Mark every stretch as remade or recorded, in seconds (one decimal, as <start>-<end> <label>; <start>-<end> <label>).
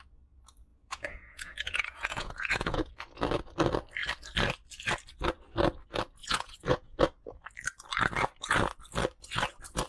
0.0-0.7 recorded; 0.7-2.9 remade; 2.9-6.2 recorded; 6.2-7.0 remade; 7.0-9.9 recorded